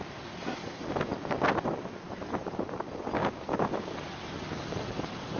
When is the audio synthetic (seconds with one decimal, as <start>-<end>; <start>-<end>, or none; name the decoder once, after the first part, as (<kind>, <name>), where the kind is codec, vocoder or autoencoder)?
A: 3.2-3.7 (codec, DAC)